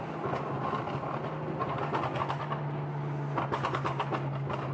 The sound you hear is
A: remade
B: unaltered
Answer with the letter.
B